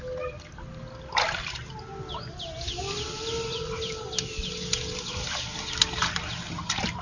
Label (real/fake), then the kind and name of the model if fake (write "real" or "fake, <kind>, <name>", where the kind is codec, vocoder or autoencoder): real